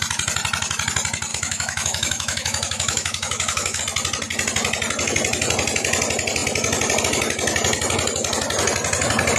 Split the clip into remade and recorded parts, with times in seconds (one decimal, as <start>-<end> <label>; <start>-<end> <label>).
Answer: 0.0-1.3 recorded; 1.3-3.8 remade; 3.8-9.4 recorded